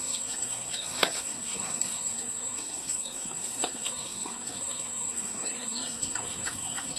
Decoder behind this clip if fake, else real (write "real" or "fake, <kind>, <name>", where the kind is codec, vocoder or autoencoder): fake, codec, SNAC